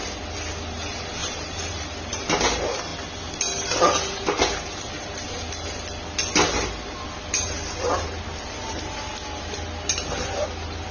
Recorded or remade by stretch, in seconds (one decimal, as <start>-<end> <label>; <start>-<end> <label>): 0.0-1.2 recorded; 1.2-2.1 remade; 2.1-10.9 recorded